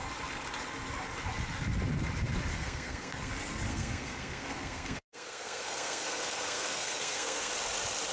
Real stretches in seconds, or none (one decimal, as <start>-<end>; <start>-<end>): 0.0-2.5; 3.3-3.7; 7.5-8.1